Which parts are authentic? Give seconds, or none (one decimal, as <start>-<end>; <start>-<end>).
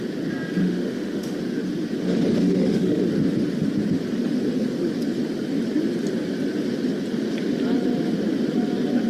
0.0-0.6; 1.4-2.4; 3.0-9.1